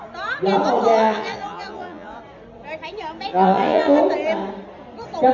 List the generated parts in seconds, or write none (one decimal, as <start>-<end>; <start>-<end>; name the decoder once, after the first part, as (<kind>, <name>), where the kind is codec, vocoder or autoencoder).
0.9-2.2 (vocoder, Vocos); 3.3-4.0